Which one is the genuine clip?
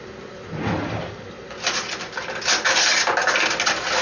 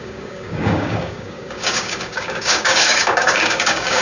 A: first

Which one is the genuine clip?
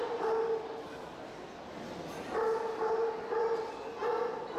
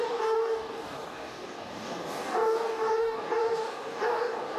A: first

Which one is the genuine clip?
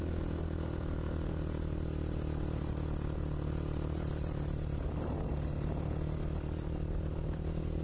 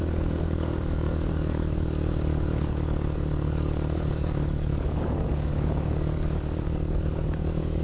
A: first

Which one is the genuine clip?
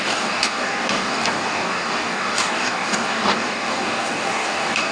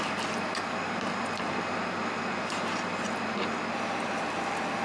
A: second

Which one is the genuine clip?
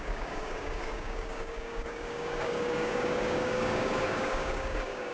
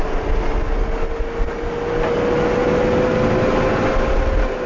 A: second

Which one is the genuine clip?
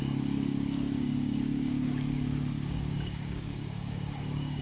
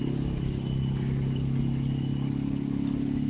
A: second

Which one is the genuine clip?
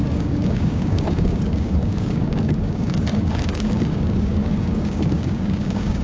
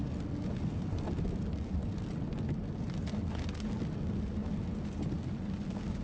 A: second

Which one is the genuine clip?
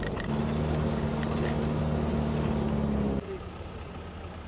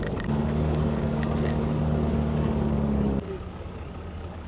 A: first